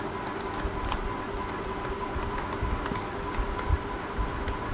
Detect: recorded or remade recorded